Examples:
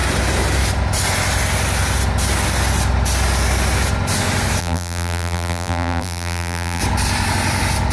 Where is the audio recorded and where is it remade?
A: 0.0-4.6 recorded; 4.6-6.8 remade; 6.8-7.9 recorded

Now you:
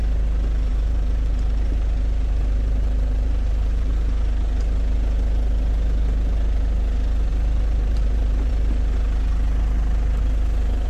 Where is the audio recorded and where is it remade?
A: 0.0-0.7 recorded; 0.7-3.9 remade; 3.9-7.3 recorded; 7.3-8.5 remade; 8.5-10.9 recorded

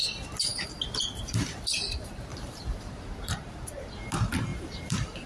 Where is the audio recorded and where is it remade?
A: 0.0-2.3 recorded; 2.3-3.9 remade; 3.9-4.5 recorded; 4.5-5.3 remade

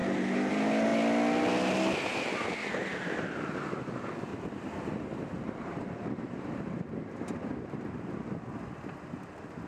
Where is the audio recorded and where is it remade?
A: 0.0-0.5 remade; 0.5-4.3 recorded; 4.3-8.6 remade; 8.6-9.7 recorded

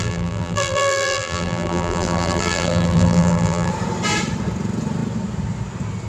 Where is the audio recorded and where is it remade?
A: 0.0-3.7 remade; 3.7-6.1 recorded